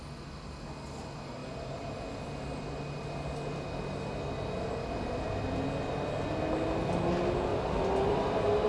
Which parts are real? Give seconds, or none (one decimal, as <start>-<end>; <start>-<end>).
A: 0.0-8.7